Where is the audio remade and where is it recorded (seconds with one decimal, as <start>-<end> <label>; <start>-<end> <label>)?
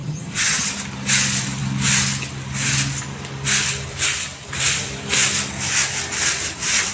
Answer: 0.0-0.7 remade; 0.7-6.9 recorded